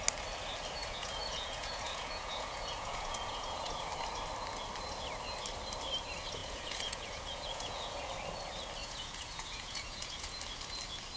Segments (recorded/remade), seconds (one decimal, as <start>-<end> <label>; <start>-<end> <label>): 0.0-0.8 recorded; 0.8-3.9 remade; 3.9-6.4 recorded; 6.4-8.1 remade; 8.1-8.8 recorded; 8.8-10.4 remade; 10.4-11.2 recorded